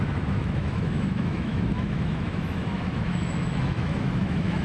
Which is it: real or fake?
fake